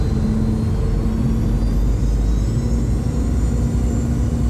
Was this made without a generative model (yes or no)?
yes